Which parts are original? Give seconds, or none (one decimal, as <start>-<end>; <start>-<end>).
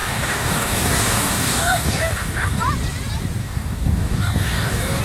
2.6-3.4